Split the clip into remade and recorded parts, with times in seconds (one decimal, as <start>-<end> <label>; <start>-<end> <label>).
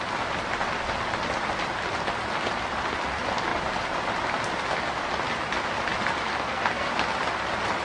0.0-6.3 recorded; 6.3-6.9 remade; 6.9-7.8 recorded